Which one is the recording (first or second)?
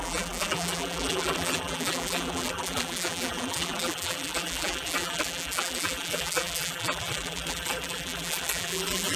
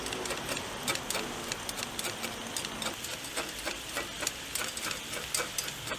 second